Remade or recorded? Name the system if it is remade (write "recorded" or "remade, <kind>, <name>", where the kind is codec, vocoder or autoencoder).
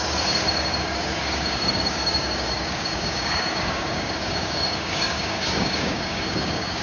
remade, codec, DAC